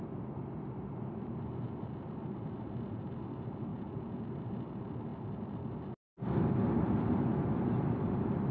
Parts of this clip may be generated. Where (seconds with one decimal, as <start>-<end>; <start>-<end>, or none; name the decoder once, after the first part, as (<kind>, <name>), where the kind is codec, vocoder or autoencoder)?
3.7-4.3 (vocoder, Vocos)